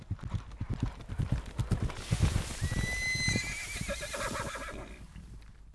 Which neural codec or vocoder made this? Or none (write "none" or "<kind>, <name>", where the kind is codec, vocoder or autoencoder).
none